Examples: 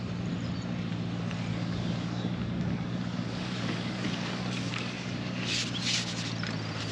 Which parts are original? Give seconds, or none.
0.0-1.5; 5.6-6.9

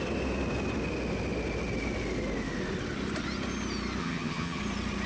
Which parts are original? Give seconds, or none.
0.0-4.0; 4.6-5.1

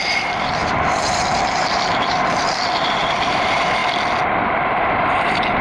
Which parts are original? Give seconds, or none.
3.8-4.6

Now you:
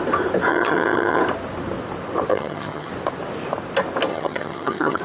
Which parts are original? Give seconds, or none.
0.0-0.5; 1.2-2.3; 2.9-4.1

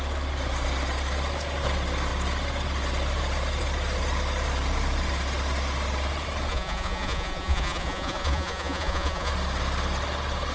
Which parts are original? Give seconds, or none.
0.0-6.5; 9.3-10.5